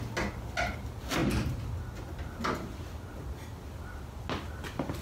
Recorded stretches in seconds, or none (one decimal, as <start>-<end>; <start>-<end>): 0.0-5.0